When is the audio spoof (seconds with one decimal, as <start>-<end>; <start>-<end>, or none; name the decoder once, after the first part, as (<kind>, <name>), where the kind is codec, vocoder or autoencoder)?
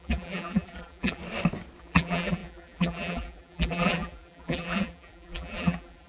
0.0-1.2 (vocoder, BigVGAN v2); 1.8-6.1